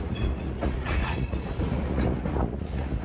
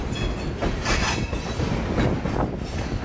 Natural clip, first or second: second